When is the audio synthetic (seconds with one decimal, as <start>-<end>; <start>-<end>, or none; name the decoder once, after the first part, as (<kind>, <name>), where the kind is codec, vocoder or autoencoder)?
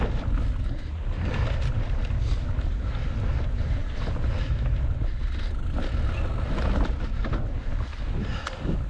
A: none